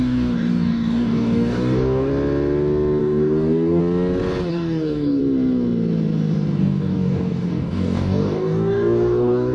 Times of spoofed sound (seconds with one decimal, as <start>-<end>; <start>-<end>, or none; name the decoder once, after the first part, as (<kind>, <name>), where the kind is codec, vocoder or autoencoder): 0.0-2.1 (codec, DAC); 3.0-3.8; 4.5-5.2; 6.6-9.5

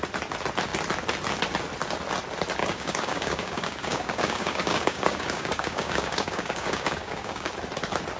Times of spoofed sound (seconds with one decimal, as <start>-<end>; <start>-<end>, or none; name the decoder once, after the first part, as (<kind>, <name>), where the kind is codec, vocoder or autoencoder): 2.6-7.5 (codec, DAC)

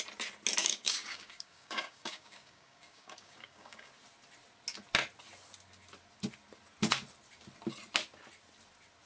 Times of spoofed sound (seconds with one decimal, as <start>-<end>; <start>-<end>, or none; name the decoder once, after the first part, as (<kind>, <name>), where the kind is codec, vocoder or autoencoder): 0.6-3.9 (codec, DAC)